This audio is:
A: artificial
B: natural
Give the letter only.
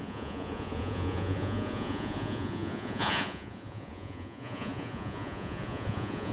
A